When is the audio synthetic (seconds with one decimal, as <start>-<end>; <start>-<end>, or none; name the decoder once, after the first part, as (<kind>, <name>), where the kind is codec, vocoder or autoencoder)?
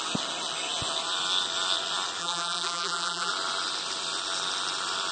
2.2-3.3 (vocoder, BigVGAN v2)